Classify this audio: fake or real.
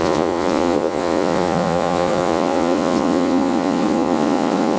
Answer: fake